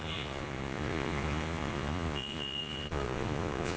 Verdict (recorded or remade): remade